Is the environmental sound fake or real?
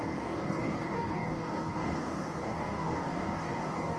fake